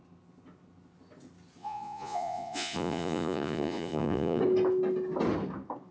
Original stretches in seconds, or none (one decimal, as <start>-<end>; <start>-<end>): 0.0-1.6; 4.4-5.9